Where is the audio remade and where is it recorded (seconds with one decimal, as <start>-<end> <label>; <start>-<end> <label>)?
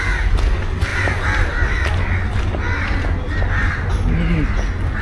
0.0-5.0 recorded